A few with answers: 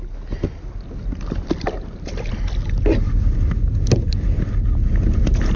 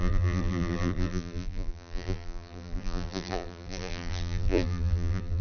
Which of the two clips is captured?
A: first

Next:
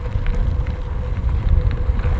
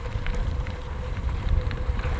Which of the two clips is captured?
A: first